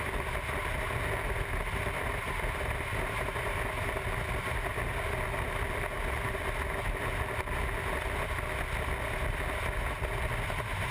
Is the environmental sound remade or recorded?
recorded